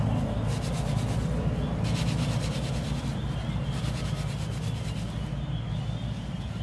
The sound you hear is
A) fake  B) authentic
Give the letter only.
B